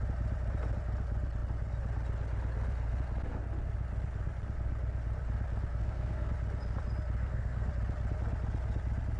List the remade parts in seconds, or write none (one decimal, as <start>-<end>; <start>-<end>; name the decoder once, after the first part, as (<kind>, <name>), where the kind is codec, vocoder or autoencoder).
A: 5.8-6.3 (codec, SNAC); 7.2-7.7